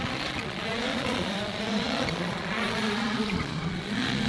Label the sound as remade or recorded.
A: remade